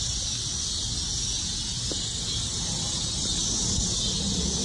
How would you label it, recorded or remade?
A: recorded